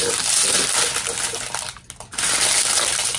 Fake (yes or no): no